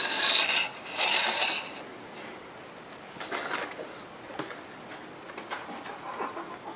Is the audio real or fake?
real